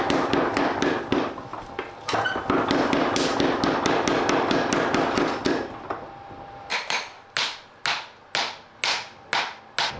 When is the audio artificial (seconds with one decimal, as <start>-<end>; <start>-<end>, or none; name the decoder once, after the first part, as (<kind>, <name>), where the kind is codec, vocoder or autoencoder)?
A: none